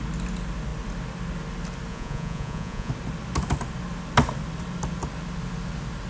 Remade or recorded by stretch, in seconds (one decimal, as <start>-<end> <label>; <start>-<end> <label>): 0.0-1.9 recorded; 1.9-2.9 remade; 2.9-6.1 recorded